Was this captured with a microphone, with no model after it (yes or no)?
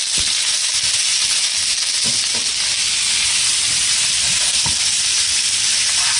yes